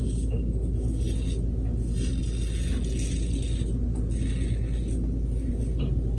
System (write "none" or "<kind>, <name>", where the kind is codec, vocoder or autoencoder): none